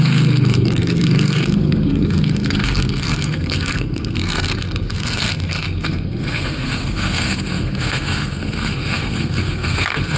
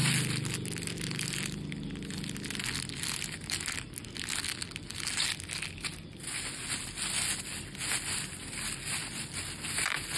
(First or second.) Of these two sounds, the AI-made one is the first